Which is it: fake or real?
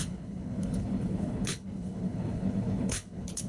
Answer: fake